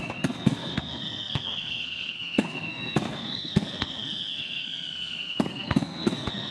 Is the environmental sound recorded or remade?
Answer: remade